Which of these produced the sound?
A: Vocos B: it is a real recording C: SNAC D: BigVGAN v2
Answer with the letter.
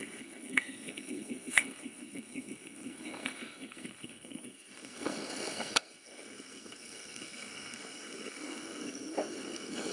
C